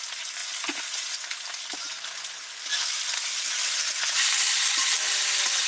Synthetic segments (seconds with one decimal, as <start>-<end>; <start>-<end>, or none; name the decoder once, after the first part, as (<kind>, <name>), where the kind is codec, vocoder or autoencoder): 3.6-5.7 (vocoder, BigVGAN v2)